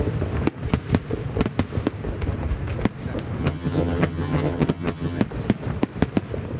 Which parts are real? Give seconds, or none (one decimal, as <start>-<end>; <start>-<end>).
0.0-3.4; 5.2-6.6